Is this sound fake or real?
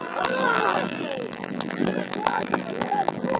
fake